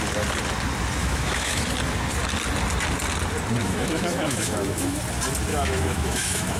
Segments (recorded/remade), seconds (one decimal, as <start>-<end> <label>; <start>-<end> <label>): 0.0-1.0 recorded; 1.0-1.7 remade; 1.7-3.6 recorded; 3.6-5.0 remade; 5.0-5.5 recorded; 5.5-6.6 remade

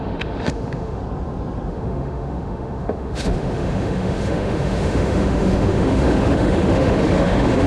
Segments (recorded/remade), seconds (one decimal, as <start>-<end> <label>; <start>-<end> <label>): 0.0-1.0 remade; 1.0-1.7 recorded; 1.7-7.7 remade

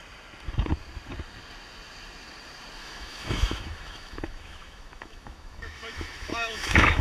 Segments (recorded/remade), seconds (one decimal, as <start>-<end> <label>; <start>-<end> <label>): 0.0-2.8 recorded; 2.8-7.0 remade

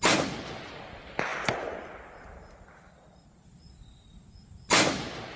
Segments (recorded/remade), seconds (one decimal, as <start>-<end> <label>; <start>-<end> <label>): 0.0-5.4 recorded

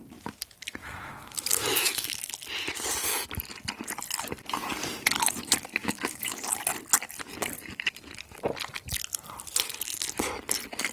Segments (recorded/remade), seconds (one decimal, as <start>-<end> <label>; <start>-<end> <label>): 0.0-0.8 recorded; 0.8-2.3 remade; 2.3-5.8 recorded; 5.8-6.4 remade; 6.4-10.9 recorded